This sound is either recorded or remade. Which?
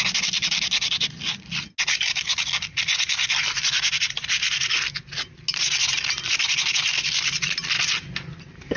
recorded